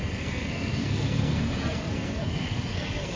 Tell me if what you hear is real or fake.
fake